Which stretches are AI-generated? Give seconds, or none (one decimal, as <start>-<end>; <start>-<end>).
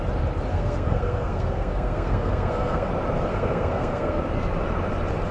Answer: 0.5-2.9; 3.3-4.2